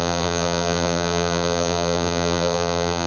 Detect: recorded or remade remade